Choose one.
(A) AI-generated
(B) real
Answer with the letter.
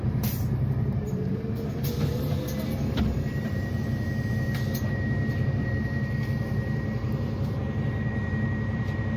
A